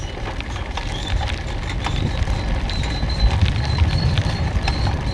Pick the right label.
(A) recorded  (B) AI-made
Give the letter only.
A